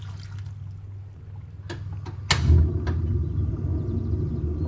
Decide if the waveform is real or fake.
real